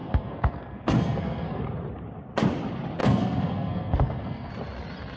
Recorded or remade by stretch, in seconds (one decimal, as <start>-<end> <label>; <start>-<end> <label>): 0.0-1.6 remade; 1.6-3.0 recorded; 3.0-4.5 remade; 4.5-5.2 recorded